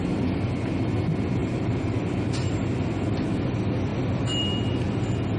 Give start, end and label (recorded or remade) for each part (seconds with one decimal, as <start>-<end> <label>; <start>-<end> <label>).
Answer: 0.0-1.4 recorded; 1.4-2.9 remade; 2.9-5.4 recorded